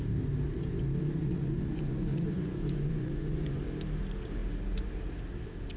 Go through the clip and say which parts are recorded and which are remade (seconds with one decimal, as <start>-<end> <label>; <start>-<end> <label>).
0.0-1.2 recorded; 1.2-3.6 remade; 3.6-5.8 recorded